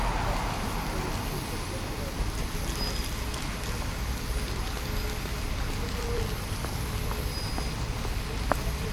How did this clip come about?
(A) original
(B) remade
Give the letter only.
A